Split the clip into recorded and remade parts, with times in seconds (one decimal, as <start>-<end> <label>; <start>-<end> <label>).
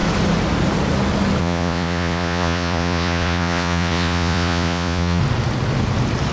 0.0-1.4 recorded; 1.4-5.2 remade; 5.2-6.3 recorded